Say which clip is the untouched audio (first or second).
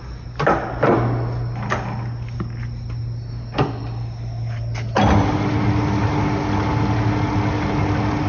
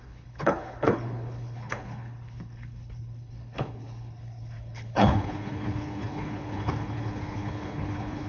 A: first